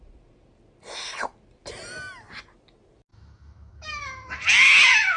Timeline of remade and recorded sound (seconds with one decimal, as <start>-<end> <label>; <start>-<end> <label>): 0.0-3.1 recorded; 3.1-4.0 remade; 4.0-5.2 recorded